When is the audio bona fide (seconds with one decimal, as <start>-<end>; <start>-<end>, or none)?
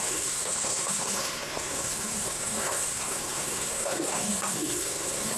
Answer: none